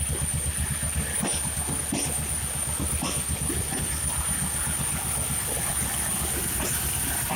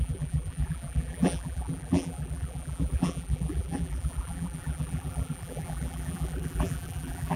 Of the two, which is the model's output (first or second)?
second